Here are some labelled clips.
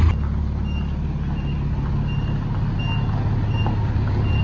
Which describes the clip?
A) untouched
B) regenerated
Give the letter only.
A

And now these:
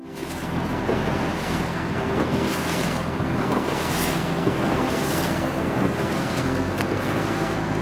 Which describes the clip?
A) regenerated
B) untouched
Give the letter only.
A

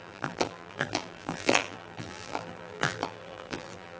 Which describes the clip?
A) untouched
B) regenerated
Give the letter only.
B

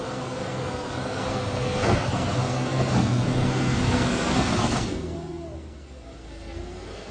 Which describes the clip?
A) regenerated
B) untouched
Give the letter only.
A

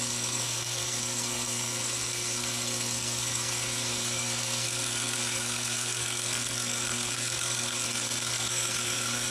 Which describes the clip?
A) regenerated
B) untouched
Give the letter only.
A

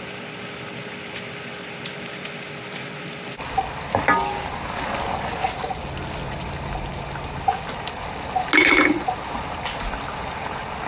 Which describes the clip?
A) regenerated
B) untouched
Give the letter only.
B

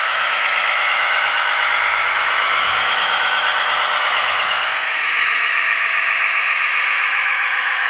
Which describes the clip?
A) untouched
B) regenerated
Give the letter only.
B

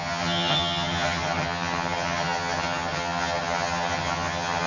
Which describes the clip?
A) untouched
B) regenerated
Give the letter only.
B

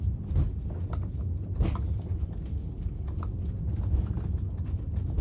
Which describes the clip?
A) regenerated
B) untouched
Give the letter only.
B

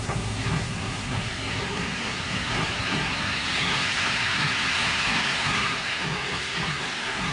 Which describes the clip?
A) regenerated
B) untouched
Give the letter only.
A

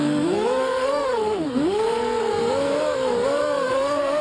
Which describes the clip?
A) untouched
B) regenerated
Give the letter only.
B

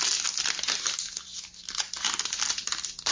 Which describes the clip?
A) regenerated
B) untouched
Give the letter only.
B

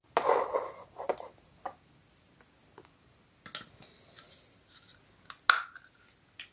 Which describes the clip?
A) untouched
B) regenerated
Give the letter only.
A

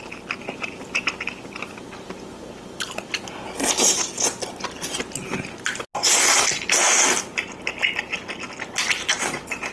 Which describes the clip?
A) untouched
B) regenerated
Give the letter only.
A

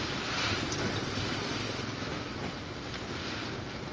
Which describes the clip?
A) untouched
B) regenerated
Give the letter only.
A